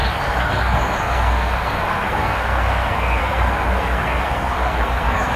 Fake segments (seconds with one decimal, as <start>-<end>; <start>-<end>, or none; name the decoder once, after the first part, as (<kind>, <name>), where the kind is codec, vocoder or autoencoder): 0.0-5.4 (codec, SNAC)